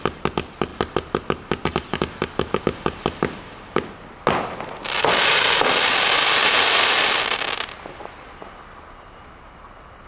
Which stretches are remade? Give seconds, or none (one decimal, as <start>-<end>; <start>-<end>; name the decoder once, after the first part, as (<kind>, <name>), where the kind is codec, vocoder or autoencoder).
none